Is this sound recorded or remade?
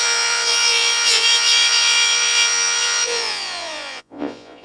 remade